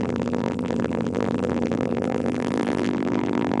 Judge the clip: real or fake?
fake